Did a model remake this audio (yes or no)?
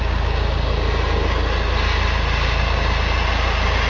no